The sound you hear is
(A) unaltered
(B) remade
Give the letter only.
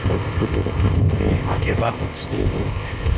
B